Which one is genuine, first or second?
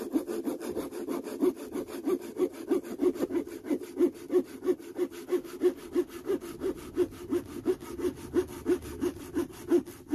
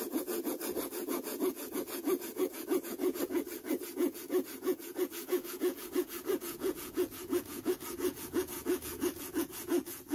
first